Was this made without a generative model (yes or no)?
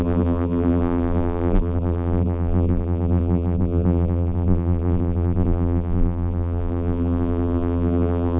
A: no